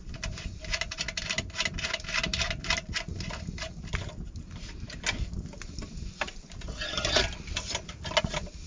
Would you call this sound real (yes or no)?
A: yes